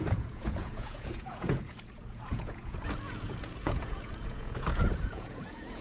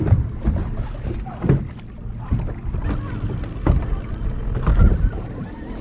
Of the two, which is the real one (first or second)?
second